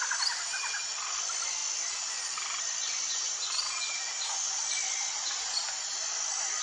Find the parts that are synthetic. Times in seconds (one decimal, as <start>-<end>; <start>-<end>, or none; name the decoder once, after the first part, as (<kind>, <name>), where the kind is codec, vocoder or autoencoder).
none